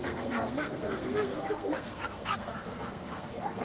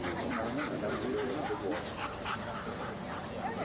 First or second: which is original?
second